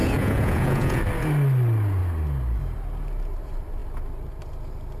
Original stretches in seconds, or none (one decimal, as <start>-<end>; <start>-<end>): 1.0-5.0